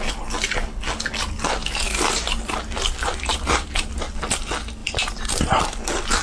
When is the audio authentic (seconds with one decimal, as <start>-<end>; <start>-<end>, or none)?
0.0-1.6; 3.9-4.8; 5.6-6.2